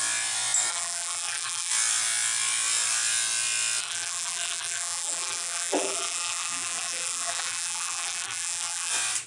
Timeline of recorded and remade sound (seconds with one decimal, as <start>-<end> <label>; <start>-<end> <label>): 0.0-0.7 recorded; 0.7-1.7 remade; 1.7-3.8 recorded; 3.8-8.9 remade; 8.9-9.3 recorded